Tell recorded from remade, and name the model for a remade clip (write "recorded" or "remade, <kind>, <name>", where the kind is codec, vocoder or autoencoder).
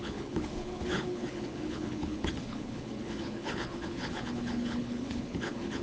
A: remade, codec, HILCodec